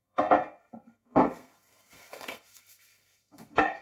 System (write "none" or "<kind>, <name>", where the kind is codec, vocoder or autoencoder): codec, SNAC